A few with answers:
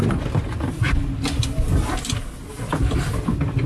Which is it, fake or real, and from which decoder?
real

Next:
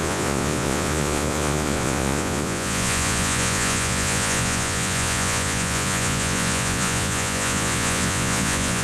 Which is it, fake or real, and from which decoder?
fake, vocoder, Vocos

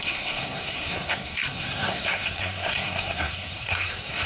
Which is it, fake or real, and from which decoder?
fake, codec, SNAC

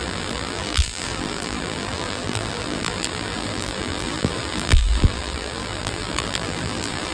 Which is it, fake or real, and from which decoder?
fake, vocoder, BigVGAN v2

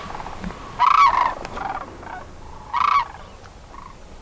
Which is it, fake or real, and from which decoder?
real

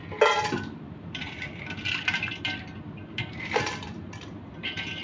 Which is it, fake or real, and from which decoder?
fake, vocoder, BigVGAN v2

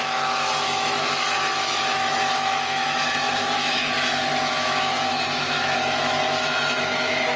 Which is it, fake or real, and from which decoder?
fake, autoencoder, DAC-VAE